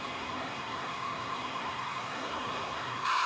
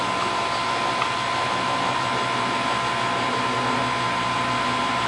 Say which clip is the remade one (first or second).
first